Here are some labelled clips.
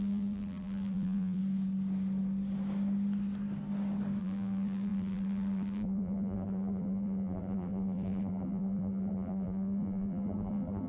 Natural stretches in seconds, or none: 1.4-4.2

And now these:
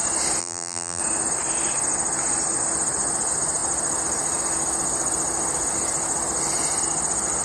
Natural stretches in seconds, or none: 0.0-0.4; 1.0-7.4

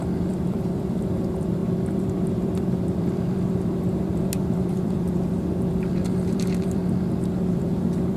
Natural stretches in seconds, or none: 6.8-7.5

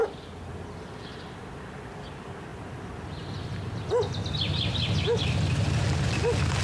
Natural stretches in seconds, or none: 0.0-6.6

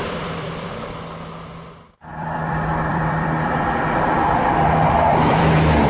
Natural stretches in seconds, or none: 0.7-2.1

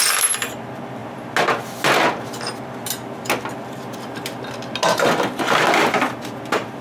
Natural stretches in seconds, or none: 0.0-6.8

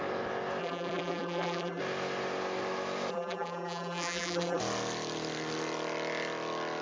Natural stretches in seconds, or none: 0.0-0.6; 1.8-3.1; 4.6-6.8

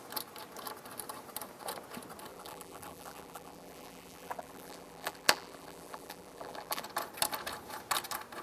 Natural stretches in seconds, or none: 0.0-2.3; 6.8-8.4